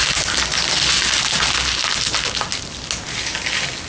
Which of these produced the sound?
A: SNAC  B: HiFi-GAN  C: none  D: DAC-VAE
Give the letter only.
C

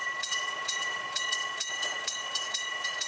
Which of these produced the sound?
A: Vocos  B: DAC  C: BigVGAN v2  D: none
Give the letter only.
A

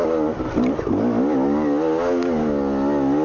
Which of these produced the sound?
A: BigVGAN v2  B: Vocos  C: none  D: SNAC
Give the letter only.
C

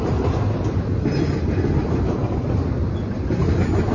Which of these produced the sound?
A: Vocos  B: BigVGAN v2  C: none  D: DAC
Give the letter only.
C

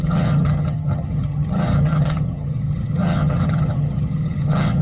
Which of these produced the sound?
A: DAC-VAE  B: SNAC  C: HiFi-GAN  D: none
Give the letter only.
C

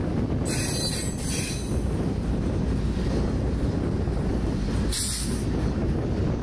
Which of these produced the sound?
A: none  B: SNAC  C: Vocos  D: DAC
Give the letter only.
A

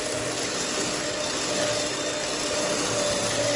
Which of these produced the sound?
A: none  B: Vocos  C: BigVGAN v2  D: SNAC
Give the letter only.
A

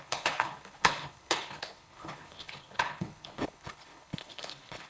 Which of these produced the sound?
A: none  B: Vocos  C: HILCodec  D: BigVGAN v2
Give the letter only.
C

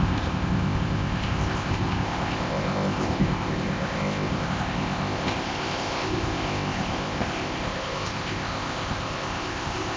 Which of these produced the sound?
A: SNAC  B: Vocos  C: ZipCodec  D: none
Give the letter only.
C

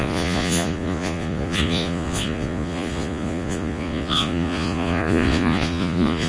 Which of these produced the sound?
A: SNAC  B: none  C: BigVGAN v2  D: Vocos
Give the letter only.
D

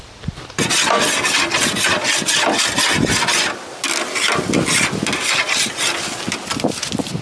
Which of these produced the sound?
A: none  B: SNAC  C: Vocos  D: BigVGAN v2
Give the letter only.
A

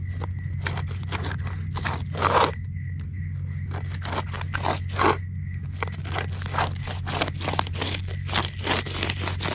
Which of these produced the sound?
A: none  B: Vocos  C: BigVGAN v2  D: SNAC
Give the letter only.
A